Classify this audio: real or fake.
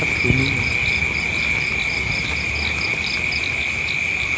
real